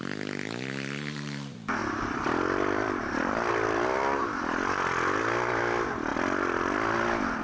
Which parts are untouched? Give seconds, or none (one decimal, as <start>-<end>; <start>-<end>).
0.0-1.8; 5.2-7.4